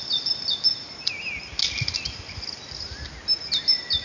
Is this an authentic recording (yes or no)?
yes